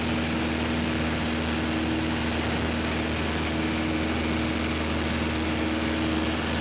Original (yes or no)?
yes